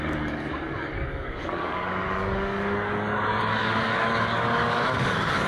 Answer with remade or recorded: remade